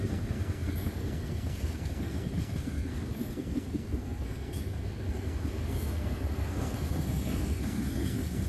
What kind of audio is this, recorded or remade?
remade